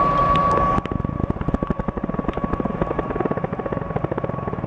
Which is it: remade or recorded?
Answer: recorded